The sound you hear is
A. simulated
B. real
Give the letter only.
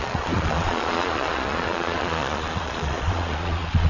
A